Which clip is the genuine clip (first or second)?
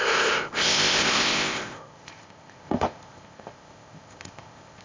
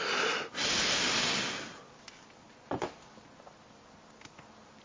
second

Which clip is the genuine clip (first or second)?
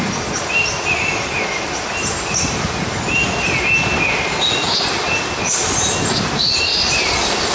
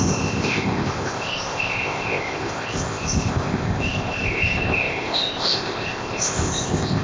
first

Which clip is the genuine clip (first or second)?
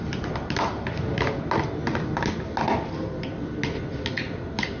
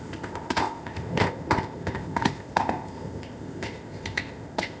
first